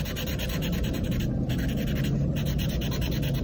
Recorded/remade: recorded